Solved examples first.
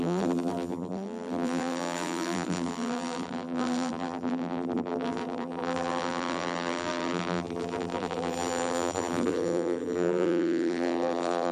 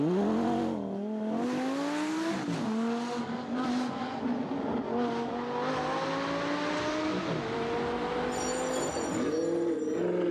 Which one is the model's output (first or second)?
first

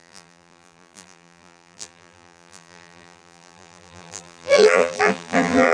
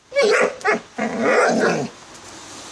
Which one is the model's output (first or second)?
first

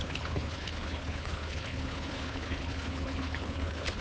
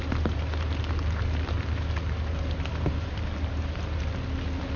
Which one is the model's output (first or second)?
first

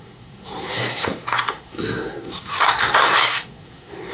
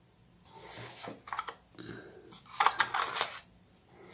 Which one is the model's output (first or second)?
first